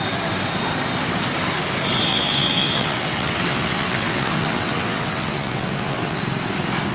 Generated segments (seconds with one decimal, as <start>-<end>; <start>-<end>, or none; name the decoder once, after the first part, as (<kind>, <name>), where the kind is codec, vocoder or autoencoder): 2.1-6.2 (vocoder, WaveNeXt)

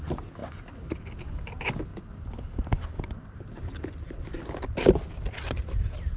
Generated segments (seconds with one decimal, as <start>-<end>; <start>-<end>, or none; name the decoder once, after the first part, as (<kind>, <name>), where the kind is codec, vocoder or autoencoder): none

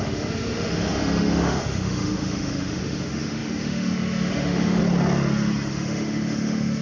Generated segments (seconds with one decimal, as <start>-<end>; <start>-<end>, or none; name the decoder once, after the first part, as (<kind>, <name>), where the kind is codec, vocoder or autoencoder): 0.0-4.8 (autoencoder, DAC-VAE); 5.7-6.8